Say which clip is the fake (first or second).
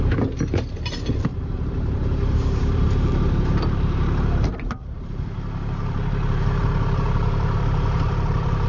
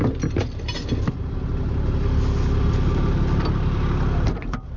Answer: first